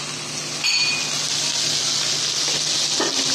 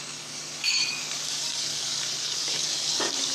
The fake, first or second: second